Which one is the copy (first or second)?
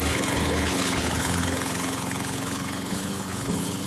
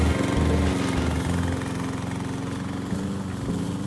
first